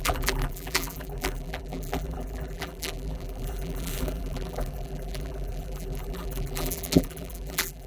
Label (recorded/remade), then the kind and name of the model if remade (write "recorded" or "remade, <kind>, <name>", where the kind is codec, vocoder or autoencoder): remade, vocoder, BigVGAN v2